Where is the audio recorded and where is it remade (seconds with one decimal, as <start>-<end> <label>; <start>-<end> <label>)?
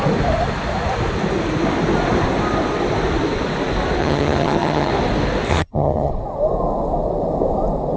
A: 0.0-4.0 recorded; 4.0-4.9 remade; 4.9-5.5 recorded; 5.5-6.1 remade; 6.1-8.0 recorded